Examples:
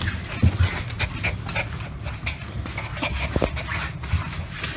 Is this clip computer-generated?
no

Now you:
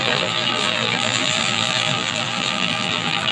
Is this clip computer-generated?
yes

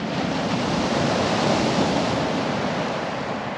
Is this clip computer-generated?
yes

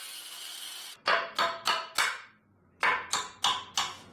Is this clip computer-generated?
no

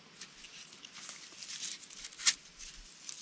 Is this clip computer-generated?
no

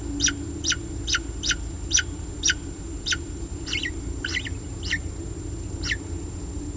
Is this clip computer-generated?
no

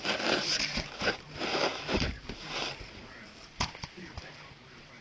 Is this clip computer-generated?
yes